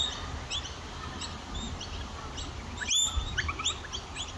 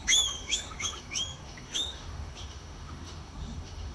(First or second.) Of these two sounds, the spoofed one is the second